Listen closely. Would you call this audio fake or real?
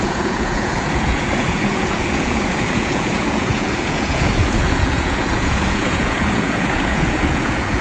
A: fake